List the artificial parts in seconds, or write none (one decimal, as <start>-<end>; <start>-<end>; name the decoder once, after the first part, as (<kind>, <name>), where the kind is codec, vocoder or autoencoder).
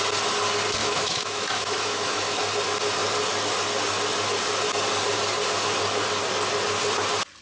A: 0.8-2.4 (autoencoder, DAC-VAE)